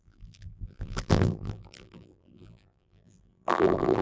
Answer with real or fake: fake